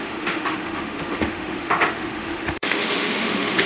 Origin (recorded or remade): remade